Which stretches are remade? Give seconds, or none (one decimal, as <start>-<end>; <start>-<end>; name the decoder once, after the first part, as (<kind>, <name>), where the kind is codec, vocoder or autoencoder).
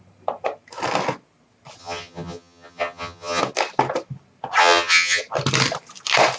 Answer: 1.8-3.4 (vocoder, HiFi-GAN); 4.6-5.2